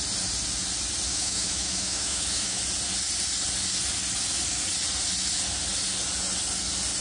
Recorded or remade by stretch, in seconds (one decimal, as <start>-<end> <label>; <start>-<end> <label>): 0.0-1.1 recorded; 1.1-2.6 remade; 2.6-7.0 recorded

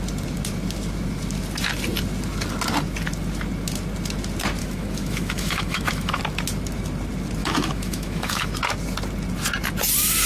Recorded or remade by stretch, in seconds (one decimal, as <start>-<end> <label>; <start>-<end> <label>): 0.0-4.6 recorded; 4.6-6.2 remade; 6.2-7.4 recorded; 7.4-8.5 remade; 8.5-10.3 recorded

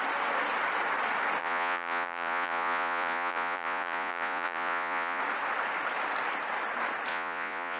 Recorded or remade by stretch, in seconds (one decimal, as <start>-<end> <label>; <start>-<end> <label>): 0.0-1.4 recorded; 1.4-5.2 remade; 5.2-7.1 recorded; 7.1-7.8 remade

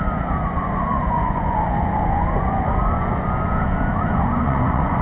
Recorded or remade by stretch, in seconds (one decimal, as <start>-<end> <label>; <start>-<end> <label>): 0.0-5.0 remade

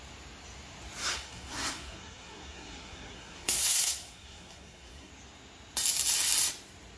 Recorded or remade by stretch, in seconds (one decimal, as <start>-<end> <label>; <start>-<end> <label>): 0.0-1.0 recorded; 1.0-5.1 remade; 5.1-7.0 recorded

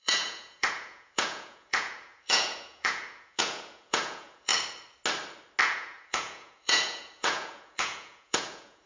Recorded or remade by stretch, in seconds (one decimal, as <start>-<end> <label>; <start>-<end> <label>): 0.0-4.5 remade; 4.5-5.6 recorded; 5.6-8.9 remade

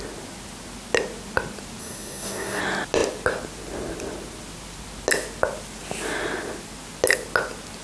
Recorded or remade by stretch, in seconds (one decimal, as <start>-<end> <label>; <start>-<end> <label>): 0.0-1.8 recorded; 1.8-2.6 remade; 2.6-7.8 recorded

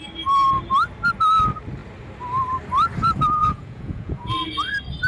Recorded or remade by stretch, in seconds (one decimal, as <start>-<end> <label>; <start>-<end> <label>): 0.0-3.4 recorded; 3.4-4.3 remade; 4.3-5.1 recorded